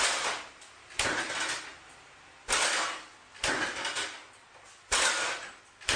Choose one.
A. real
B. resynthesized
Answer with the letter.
A